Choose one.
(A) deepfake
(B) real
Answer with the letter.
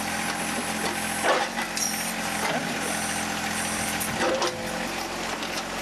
B